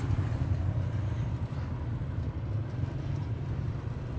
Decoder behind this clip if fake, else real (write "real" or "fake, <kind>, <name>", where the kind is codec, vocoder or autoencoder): real